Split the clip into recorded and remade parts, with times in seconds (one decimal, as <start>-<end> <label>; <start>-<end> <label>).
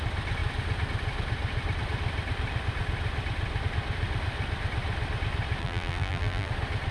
0.0-5.6 recorded; 5.6-6.5 remade; 6.5-6.9 recorded